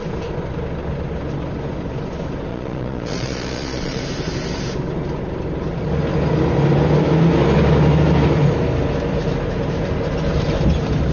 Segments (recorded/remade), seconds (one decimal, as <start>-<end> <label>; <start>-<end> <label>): 0.0-2.5 recorded; 2.5-4.0 remade; 4.0-11.1 recorded